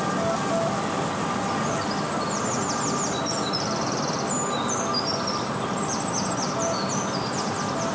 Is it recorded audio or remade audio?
recorded